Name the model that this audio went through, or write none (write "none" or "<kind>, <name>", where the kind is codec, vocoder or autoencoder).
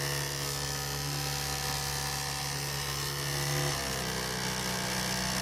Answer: none